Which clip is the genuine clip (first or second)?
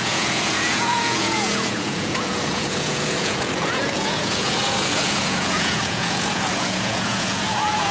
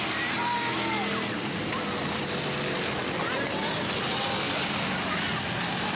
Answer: second